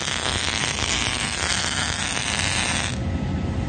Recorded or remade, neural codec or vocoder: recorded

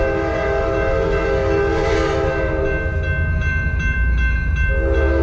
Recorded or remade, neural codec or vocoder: recorded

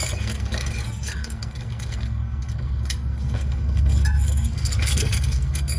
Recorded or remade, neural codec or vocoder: remade, codec, SNAC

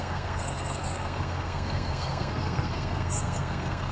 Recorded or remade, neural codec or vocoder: remade, codec, SNAC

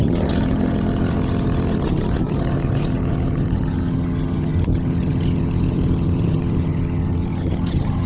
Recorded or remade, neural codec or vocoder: remade, vocoder, HiFi-GAN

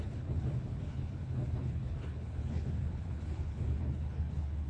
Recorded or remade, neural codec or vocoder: remade, codec, HILCodec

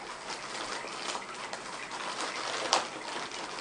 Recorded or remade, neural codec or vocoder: recorded